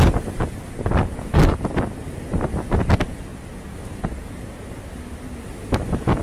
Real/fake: real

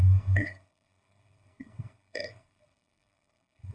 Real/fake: fake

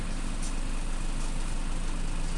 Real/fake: real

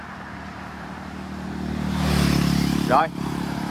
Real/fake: fake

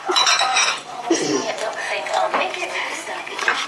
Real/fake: fake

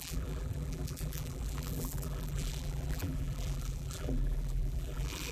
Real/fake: fake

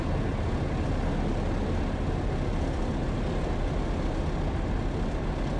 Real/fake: real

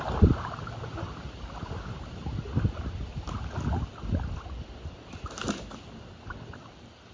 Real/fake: real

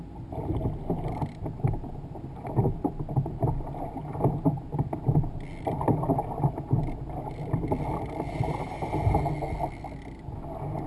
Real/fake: real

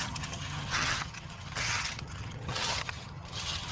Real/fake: fake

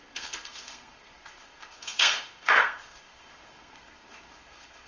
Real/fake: fake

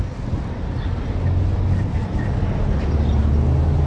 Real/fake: real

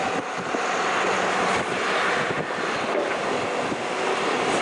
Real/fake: real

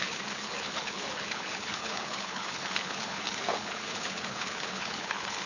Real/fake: fake